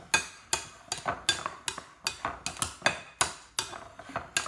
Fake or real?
real